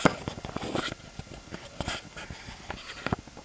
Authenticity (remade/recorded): recorded